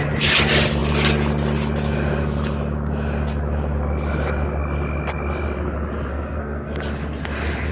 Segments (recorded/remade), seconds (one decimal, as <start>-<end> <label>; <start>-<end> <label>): 0.0-6.1 recorded; 6.1-6.8 remade; 6.8-7.7 recorded